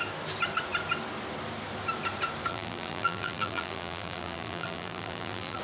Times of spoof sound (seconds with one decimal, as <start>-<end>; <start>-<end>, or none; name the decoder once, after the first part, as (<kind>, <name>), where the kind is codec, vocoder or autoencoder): 2.5-5.6 (vocoder, BigVGAN v2)